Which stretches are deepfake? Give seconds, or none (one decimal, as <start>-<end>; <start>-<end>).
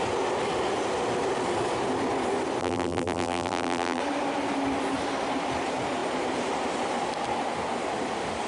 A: 2.6-4.0